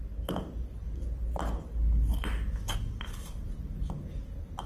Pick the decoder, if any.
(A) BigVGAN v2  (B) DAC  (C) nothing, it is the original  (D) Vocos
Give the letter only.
C